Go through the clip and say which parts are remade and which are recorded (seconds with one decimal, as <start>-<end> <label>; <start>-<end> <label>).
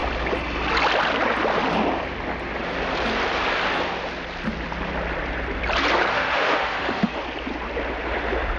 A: 0.0-6.1 recorded; 6.1-7.2 remade; 7.2-8.6 recorded